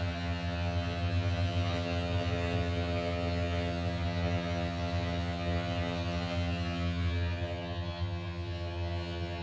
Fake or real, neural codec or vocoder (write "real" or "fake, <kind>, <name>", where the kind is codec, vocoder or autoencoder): fake, vocoder, HiFi-GAN